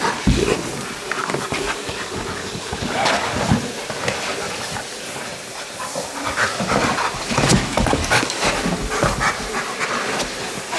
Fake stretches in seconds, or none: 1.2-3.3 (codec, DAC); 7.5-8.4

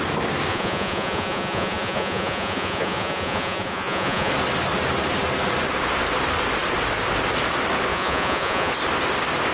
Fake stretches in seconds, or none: 0.5-4.3 (vocoder, Vocos); 7.9-8.7

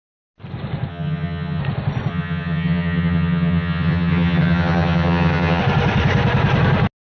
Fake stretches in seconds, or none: 0.9-1.6 (vocoder, HiFi-GAN); 2.1-5.6

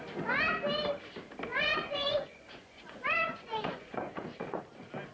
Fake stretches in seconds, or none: 1.5-4.6 (vocoder, Vocos)

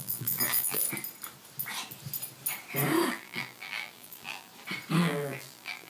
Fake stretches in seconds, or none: 0.0-0.8 (vocoder, BigVGAN v2); 3.1-4.5; 5.0-5.9

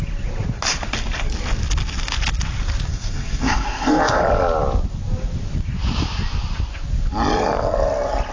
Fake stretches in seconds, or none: 2.9-4.2 (codec, SNAC)